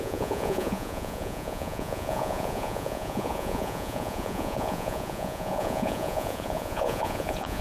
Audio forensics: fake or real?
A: fake